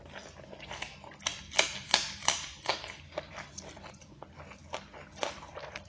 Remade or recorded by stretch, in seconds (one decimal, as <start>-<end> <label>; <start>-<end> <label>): 0.0-0.9 recorded; 0.9-1.5 remade; 1.5-2.5 recorded; 2.5-4.1 remade; 4.1-5.2 recorded; 5.2-5.9 remade